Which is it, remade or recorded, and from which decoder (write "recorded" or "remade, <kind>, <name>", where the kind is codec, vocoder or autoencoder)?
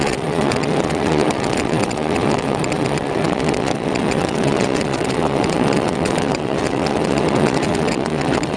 remade, vocoder, WaveNeXt